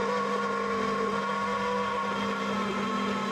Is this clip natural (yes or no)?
yes